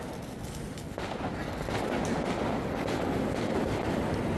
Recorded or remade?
recorded